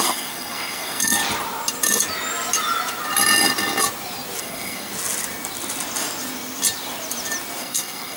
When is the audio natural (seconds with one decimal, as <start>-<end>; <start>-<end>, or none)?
1.2-4.4; 4.9-7.6